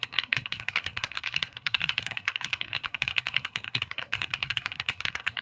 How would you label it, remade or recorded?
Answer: remade